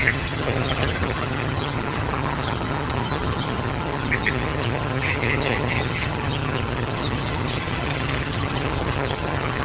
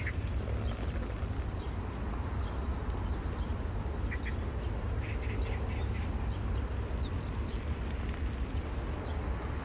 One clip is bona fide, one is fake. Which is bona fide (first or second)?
second